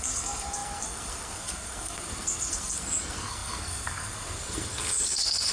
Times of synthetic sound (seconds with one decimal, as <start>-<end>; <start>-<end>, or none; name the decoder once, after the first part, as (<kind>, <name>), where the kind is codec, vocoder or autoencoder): 0.0-5.5 (codec, SNAC)